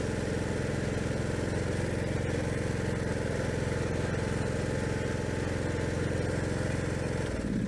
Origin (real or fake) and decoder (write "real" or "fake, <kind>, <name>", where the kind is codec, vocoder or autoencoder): real